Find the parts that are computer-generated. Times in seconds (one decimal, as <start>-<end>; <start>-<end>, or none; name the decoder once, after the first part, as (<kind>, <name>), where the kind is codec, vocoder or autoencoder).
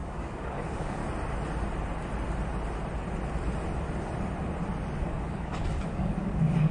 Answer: 0.0-1.0 (codec, DAC); 5.0-6.7